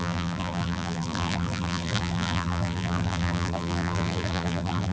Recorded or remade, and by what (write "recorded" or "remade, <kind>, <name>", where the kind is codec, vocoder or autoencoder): remade, vocoder, BigVGAN v2